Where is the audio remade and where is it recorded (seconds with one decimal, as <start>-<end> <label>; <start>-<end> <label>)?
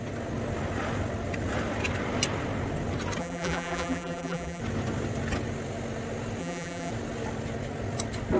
0.0-3.2 recorded; 3.2-4.6 remade; 4.6-6.4 recorded; 6.4-6.9 remade; 6.9-8.4 recorded